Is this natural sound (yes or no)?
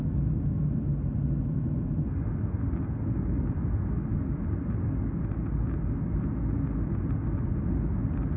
yes